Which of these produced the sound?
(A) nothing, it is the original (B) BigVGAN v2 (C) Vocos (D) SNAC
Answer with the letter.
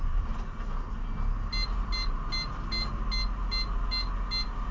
A